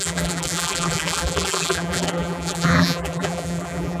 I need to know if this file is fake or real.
fake